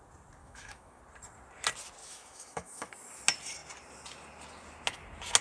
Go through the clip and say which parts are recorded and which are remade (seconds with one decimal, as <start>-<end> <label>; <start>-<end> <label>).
0.0-0.4 recorded; 0.4-1.0 remade; 1.0-2.0 recorded; 2.0-2.9 remade; 2.9-5.4 recorded